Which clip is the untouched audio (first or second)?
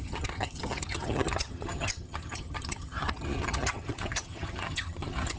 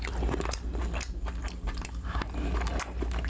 second